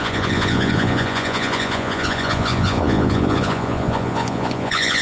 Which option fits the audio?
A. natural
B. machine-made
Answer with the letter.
B